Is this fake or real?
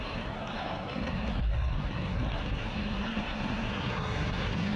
fake